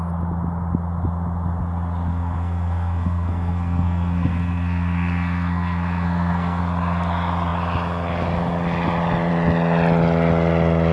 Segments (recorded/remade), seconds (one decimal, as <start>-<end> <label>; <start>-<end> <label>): 0.0-2.1 recorded; 2.1-6.6 remade; 6.6-10.9 recorded